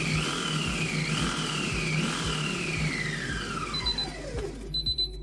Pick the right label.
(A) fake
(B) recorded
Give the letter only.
B